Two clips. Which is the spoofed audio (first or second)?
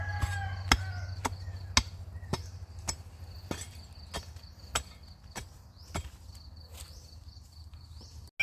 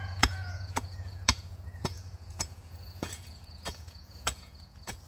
second